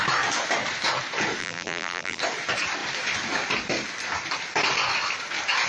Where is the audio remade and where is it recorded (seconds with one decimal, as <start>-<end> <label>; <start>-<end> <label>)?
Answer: 0.0-1.4 recorded; 1.4-2.2 remade; 2.2-5.7 recorded